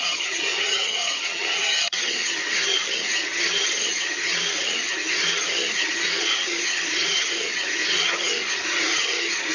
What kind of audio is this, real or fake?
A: fake